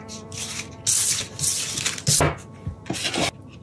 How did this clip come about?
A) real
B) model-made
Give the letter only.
A